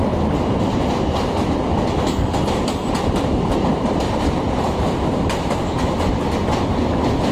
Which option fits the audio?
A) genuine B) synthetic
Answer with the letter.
B